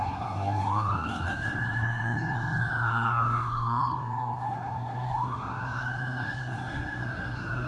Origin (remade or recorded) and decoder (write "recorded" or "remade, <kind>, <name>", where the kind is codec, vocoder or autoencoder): remade, codec, SNAC